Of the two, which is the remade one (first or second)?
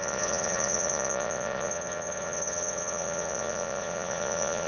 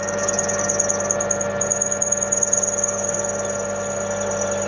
first